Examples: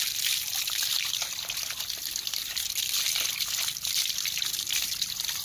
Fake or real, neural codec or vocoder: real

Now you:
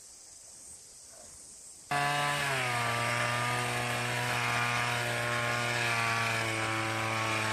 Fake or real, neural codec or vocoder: real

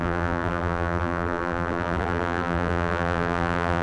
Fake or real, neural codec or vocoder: fake, vocoder, BigVGAN v2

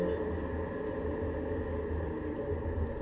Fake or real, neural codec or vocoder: real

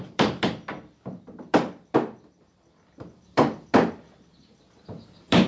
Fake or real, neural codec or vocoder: fake, vocoder, BigVGAN v2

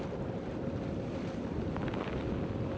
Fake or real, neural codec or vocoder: real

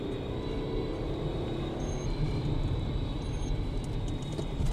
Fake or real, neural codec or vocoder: fake, vocoder, BigVGAN v2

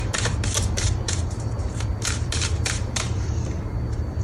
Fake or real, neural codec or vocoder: fake, vocoder, BigVGAN v2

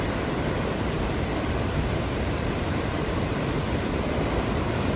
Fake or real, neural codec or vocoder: fake, vocoder, BigVGAN v2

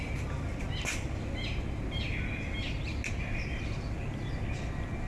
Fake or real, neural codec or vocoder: real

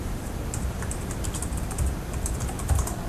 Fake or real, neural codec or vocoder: fake, vocoder, BigVGAN v2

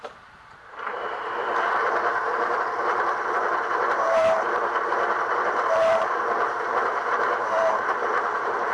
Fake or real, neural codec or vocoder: fake, vocoder, BigVGAN v2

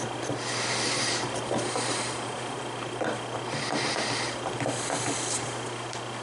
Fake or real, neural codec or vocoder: real